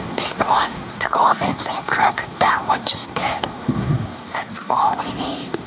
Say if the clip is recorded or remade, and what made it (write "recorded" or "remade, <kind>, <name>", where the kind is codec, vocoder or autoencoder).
remade, codec, SNAC